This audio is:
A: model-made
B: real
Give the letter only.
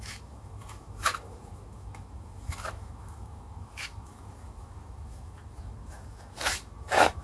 A